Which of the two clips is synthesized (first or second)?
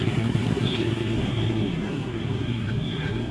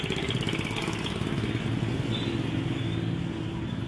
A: first